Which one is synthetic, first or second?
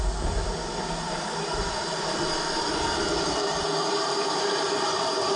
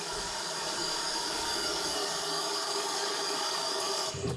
second